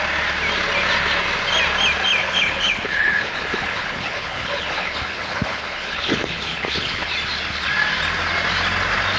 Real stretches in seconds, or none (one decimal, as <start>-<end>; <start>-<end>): 0.0-2.2; 7.1-9.2